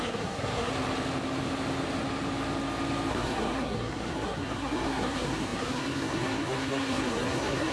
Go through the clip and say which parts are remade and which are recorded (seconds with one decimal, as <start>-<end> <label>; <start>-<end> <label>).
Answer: 0.0-0.7 remade; 0.7-3.1 recorded; 3.1-7.7 remade